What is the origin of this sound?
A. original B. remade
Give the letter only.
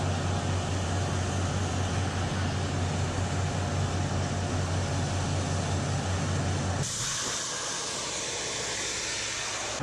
A